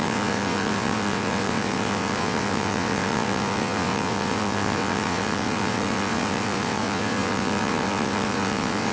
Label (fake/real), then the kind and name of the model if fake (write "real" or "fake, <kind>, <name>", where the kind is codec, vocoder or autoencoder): fake, vocoder, WaveNeXt